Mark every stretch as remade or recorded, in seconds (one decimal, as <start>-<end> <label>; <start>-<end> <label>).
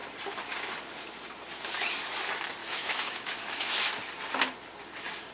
0.0-2.6 recorded; 2.6-3.7 remade; 3.7-5.3 recorded